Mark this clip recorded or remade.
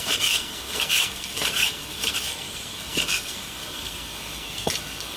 remade